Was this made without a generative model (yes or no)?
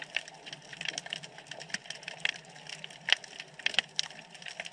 no